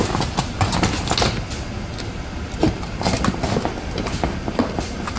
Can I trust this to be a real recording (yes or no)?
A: yes